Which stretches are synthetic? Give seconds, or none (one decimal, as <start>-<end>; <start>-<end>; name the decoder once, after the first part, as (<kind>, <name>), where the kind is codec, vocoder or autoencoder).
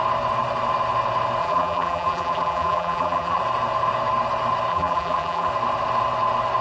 1.4-3.4 (vocoder, BigVGAN v2); 4.7-5.5